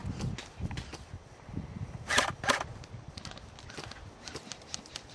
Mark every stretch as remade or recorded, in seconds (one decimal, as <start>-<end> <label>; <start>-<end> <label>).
0.0-5.1 recorded